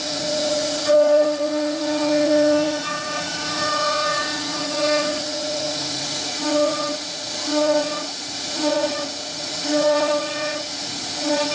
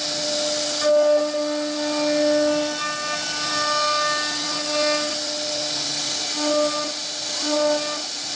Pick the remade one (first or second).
first